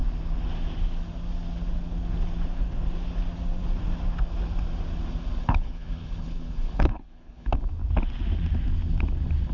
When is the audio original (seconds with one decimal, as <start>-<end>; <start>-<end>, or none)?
0.0-5.4; 7.5-9.5